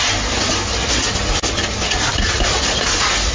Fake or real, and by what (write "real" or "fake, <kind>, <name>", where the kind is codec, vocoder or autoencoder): real